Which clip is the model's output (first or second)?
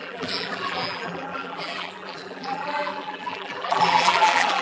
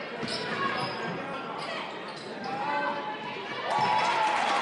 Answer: first